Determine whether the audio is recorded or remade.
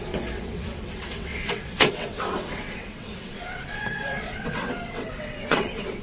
remade